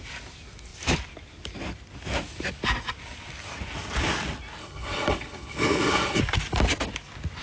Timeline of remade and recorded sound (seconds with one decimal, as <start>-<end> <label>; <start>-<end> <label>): 0.0-4.6 recorded; 4.6-6.2 remade; 6.2-7.4 recorded